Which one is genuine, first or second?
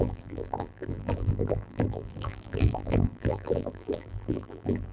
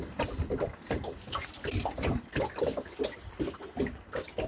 second